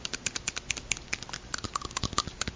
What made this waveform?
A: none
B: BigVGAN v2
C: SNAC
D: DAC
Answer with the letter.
A